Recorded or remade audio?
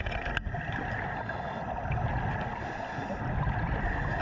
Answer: recorded